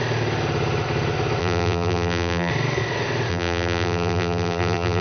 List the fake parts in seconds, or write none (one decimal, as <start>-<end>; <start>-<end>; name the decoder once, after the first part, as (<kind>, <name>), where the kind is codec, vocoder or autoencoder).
1.4-2.5 (vocoder, BigVGAN v2); 3.3-5.0